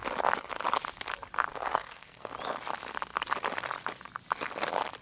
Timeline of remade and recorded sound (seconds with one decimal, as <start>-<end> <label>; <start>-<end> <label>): 0.0-1.5 recorded; 1.5-2.3 remade; 2.3-5.0 recorded